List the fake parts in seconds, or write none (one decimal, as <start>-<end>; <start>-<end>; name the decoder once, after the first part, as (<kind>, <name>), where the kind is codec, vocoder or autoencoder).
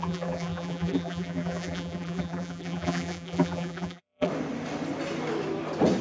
0.0-4.3 (vocoder, BigVGAN v2)